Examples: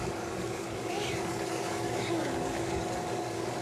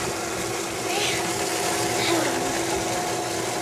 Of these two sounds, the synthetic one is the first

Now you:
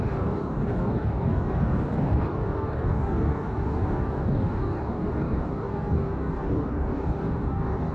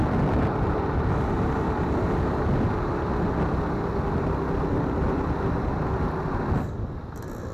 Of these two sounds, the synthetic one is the first